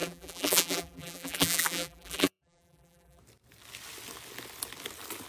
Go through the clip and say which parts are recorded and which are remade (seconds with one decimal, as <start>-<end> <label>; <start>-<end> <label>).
0.0-3.2 remade; 3.2-5.3 recorded